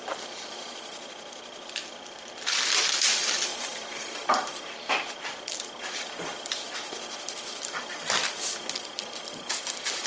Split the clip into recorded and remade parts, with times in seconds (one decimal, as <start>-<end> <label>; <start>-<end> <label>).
0.0-10.1 recorded